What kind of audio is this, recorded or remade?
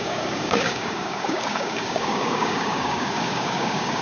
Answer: remade